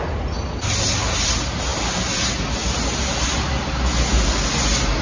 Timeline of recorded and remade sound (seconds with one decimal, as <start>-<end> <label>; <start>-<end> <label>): 0.0-5.0 recorded

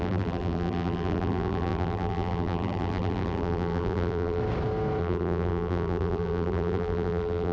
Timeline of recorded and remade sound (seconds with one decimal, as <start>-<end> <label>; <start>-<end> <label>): 0.0-4.4 remade; 4.4-5.0 recorded; 5.0-7.5 remade